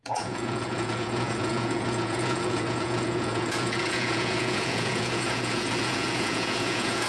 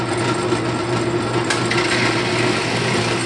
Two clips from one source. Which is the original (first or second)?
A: second